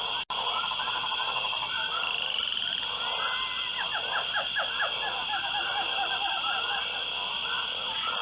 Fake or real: real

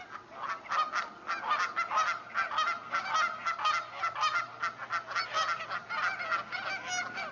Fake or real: real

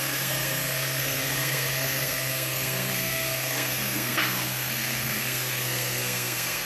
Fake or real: fake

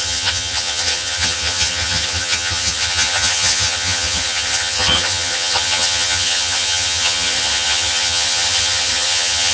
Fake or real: fake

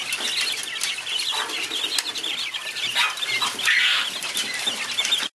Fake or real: real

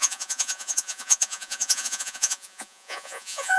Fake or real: fake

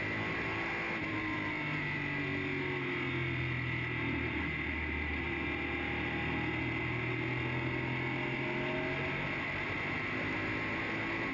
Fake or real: real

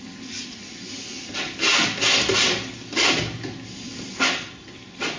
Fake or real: real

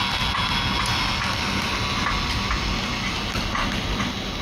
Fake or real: real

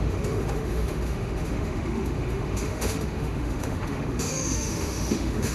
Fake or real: fake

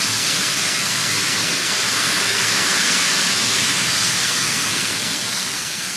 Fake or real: fake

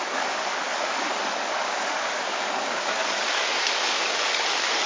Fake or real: fake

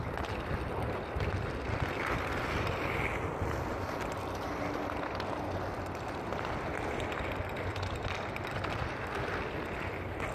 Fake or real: real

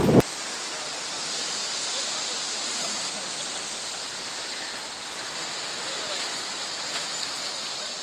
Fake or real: real